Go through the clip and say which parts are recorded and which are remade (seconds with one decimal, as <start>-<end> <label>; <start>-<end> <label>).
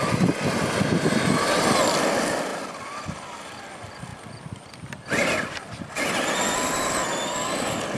0.0-8.0 recorded